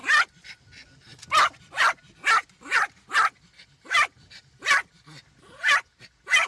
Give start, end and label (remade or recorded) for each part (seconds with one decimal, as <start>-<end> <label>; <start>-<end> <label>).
0.0-6.5 recorded